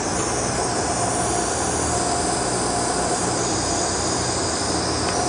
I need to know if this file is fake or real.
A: real